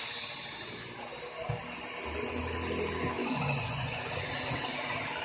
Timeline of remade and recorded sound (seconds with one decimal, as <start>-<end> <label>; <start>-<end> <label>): 0.0-3.2 recorded; 3.2-4.3 remade; 4.3-5.2 recorded